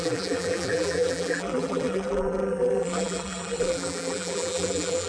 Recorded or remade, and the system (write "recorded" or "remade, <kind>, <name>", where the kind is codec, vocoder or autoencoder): remade, vocoder, BigVGAN v2